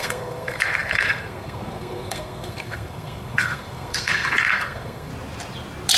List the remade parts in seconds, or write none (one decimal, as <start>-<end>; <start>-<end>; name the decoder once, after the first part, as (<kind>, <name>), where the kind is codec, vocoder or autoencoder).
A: 0.0-5.1 (codec, SNAC)

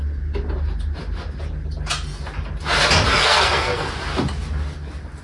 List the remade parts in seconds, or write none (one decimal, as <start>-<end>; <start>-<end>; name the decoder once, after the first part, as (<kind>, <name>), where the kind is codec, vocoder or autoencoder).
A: 3.1-3.9 (codec, SNAC)

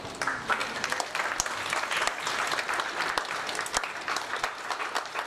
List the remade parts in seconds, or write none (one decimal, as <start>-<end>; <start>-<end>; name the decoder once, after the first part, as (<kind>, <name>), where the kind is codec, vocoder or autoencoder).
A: none

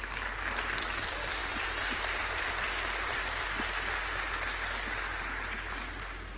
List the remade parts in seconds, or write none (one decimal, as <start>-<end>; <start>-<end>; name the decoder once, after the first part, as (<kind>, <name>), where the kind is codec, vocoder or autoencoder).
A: none

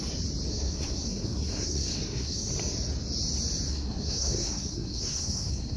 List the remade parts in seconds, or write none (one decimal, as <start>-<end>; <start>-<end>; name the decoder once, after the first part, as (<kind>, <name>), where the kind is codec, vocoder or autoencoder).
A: 0.5-2.5 (codec, SNAC); 3.7-5.8